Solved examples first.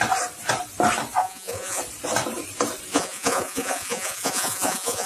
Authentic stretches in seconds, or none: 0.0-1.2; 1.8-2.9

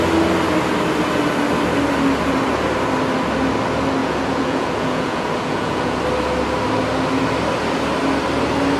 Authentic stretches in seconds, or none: 0.0-4.0; 6.0-8.8